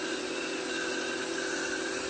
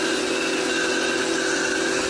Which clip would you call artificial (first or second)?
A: first